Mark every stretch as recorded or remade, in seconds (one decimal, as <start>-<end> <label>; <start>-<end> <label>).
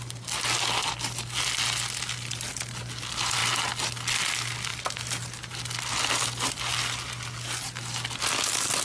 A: 0.0-8.8 recorded